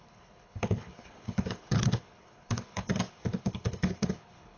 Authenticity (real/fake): fake